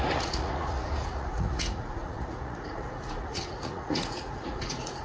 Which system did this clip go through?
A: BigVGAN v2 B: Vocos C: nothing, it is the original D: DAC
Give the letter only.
B